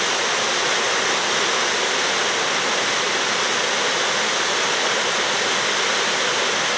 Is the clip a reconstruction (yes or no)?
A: no